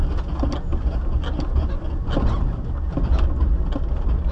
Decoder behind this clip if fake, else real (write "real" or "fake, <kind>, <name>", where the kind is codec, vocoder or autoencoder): real